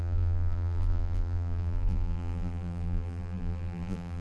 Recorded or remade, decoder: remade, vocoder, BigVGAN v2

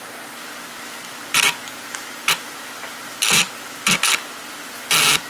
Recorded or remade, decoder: recorded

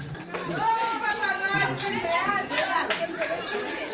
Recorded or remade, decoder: remade, vocoder, BigVGAN v2